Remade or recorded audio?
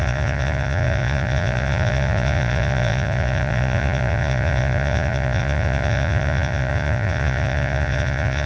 remade